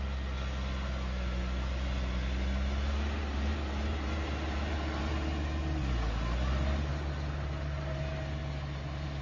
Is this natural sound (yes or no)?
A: yes